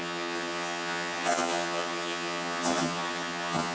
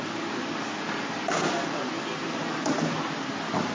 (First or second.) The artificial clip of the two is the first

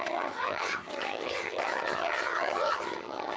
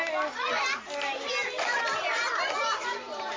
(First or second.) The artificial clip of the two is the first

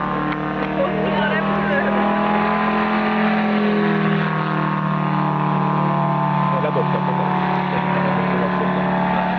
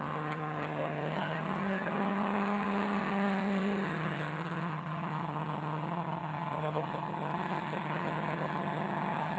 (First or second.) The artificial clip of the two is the second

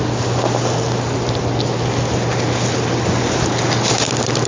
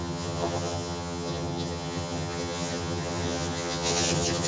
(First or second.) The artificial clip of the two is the second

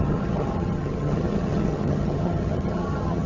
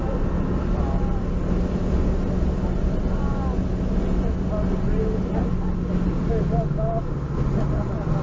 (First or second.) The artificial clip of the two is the first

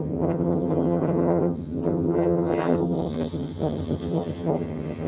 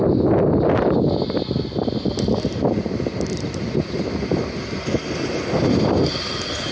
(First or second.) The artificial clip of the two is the first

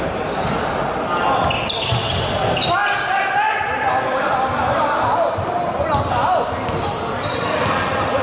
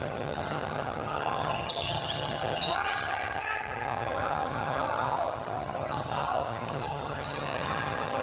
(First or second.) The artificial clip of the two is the second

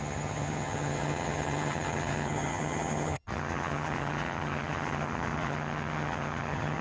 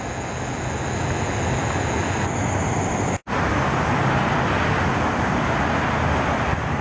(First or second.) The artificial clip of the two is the first